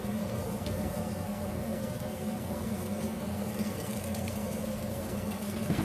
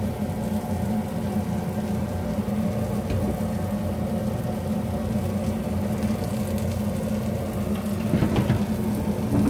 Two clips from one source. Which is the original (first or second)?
second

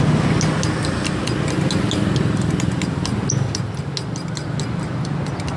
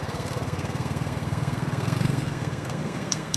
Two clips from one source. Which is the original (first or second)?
first